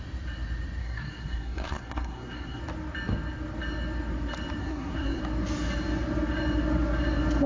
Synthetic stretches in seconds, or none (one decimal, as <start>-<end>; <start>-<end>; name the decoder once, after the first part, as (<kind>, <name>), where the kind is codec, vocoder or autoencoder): 0.8-2.6 (codec, SNAC); 4.6-5.2